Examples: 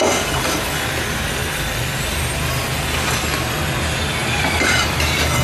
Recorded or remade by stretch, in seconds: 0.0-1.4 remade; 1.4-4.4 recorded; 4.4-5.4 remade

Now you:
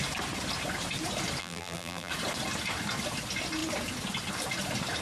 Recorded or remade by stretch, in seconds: 0.0-1.4 recorded; 1.4-2.1 remade; 2.1-5.0 recorded

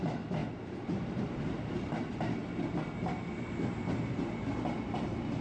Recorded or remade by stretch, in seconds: 0.0-0.4 recorded; 0.4-1.2 remade; 1.2-5.4 recorded

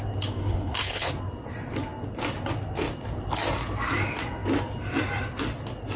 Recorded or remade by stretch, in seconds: 0.0-0.4 recorded; 0.4-1.1 remade; 1.1-6.0 recorded

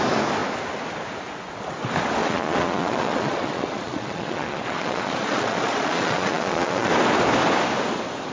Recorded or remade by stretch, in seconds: 0.0-2.2 recorded; 2.2-6.9 remade; 6.9-8.3 recorded

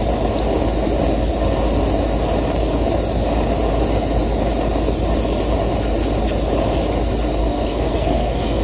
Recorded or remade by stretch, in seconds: 0.0-7.4 recorded; 7.4-8.6 remade

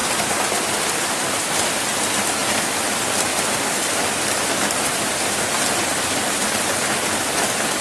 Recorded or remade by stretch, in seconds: 0.0-7.8 recorded